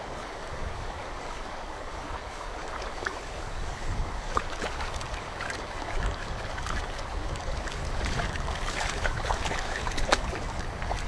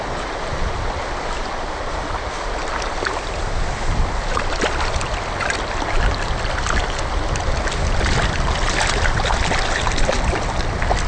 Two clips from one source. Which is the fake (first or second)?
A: first